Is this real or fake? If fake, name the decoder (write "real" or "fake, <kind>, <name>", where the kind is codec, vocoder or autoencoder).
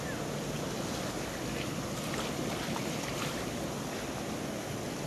real